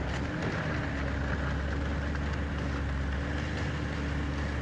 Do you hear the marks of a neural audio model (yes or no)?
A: no